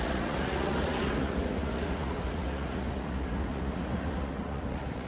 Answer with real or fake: fake